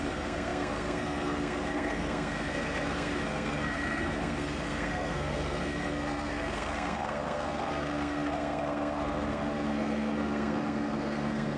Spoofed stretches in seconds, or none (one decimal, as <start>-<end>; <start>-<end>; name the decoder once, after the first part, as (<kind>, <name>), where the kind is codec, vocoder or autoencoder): 0.0-11.6 (codec, SNAC)

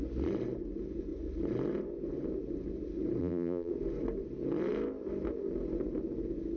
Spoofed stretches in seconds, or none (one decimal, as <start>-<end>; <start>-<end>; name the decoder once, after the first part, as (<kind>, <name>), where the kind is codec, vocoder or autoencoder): 3.2-3.7 (vocoder, BigVGAN v2)

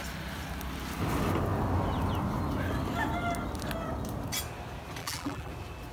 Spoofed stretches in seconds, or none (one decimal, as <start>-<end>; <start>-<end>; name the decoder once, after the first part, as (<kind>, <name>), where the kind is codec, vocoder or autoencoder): 5.0-5.5 (vocoder, BigVGAN v2)